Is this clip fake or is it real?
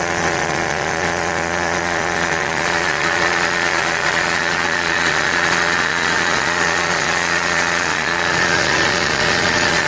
fake